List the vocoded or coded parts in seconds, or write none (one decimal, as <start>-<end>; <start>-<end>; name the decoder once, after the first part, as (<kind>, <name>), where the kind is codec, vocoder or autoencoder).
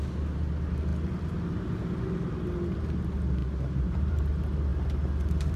3.4-4.3 (vocoder, BigVGAN v2)